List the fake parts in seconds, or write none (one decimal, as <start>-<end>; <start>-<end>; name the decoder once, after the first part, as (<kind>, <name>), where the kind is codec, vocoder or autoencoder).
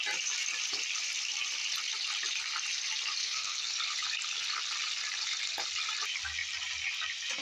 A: 3.2-3.7 (codec, SNAC)